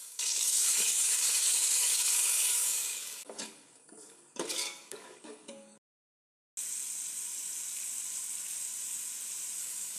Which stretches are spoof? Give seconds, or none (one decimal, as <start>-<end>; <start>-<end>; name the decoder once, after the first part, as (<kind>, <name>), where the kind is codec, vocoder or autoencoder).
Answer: 0.0-6.2 (codec, DAC); 9.6-10.0